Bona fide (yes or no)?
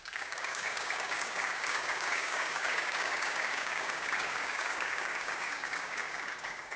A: no